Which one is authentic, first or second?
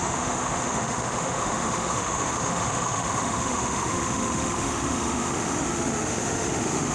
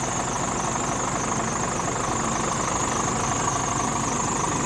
second